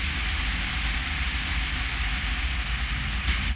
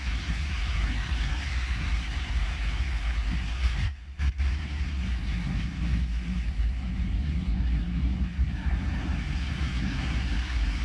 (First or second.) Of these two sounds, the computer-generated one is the second